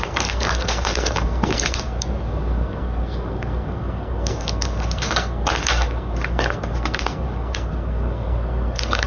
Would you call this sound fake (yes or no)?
yes